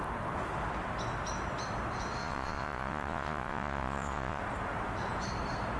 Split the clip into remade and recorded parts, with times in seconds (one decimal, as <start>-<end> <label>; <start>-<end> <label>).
0.0-2.2 recorded; 2.2-4.4 remade; 4.4-5.8 recorded

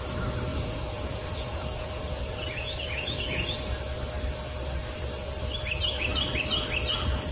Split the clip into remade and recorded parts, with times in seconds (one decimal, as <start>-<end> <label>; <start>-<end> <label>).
0.0-0.5 recorded; 0.5-3.6 remade; 3.6-7.3 recorded

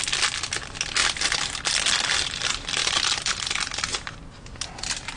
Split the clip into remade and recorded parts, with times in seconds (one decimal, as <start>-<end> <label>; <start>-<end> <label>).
0.0-5.2 recorded

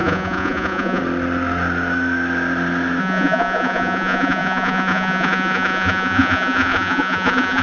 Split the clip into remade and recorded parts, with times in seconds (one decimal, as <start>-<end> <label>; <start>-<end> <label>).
0.0-1.0 remade; 1.0-3.0 recorded; 3.0-7.6 remade

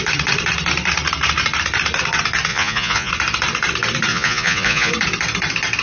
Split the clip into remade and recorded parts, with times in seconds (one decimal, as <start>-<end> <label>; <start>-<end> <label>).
0.0-2.5 recorded; 2.5-3.1 remade; 3.1-4.1 recorded; 4.1-4.9 remade; 4.9-5.8 recorded

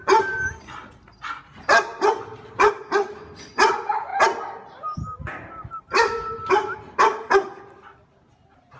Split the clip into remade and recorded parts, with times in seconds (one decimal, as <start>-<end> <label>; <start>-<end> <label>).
0.0-8.8 recorded

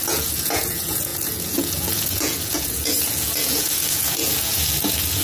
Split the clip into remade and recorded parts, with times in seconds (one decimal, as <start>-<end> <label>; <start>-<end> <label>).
0.0-5.2 remade